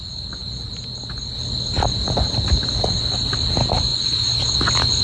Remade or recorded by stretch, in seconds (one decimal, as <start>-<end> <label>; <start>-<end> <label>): 0.0-0.4 remade; 0.4-1.2 recorded; 1.2-3.9 remade; 3.9-5.0 recorded